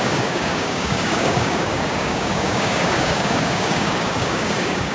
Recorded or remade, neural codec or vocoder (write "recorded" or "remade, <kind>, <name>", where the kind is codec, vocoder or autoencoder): remade, codec, DAC